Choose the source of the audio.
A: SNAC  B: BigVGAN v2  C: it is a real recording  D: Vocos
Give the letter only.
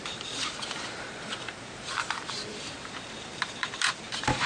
B